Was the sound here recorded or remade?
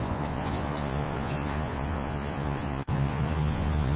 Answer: remade